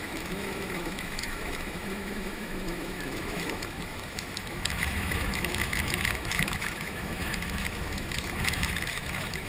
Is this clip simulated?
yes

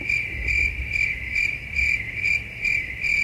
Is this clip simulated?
no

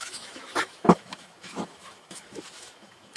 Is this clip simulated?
yes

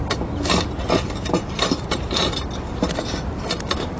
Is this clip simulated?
no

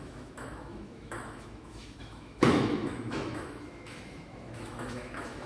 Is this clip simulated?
yes